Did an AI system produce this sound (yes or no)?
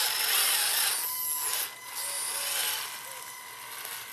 no